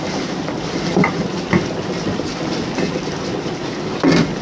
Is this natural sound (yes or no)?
yes